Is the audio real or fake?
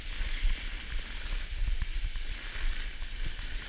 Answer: real